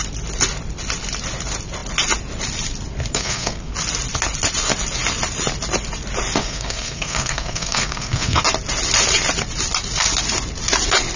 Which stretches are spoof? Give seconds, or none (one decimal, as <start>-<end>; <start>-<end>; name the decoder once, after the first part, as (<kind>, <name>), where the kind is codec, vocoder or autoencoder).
3.1-3.7 (codec, SNAC); 6.4-8.4